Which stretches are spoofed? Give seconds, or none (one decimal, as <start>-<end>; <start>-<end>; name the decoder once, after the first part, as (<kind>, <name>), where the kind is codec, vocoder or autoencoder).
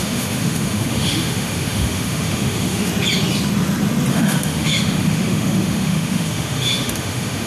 0.0-2.9 (autoencoder, DAC-VAE); 4.1-7.5